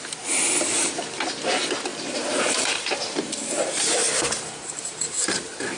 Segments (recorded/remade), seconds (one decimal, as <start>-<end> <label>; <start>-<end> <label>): 0.0-1.9 recorded; 1.9-5.8 remade